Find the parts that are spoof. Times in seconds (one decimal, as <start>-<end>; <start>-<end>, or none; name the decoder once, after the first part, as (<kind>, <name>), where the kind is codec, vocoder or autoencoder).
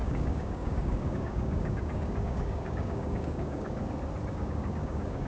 0.0-3.8 (codec, DAC); 4.3-5.3